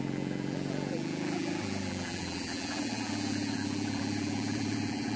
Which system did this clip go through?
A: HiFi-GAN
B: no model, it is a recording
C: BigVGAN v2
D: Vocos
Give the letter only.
C